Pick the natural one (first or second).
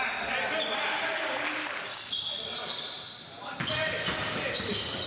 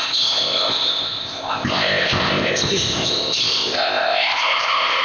first